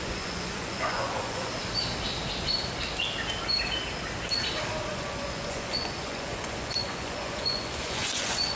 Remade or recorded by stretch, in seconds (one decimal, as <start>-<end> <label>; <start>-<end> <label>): 0.0-1.5 remade; 1.5-4.9 recorded; 4.9-8.6 remade